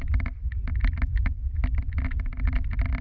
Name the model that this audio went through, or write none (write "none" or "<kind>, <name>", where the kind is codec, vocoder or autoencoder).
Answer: none